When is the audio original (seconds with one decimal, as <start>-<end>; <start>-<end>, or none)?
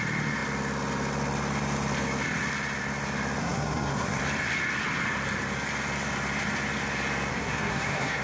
0.0-3.4; 4.2-7.3